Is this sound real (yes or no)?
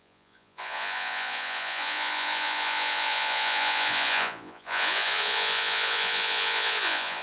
no